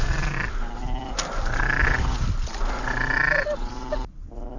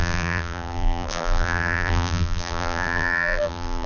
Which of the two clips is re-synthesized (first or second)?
second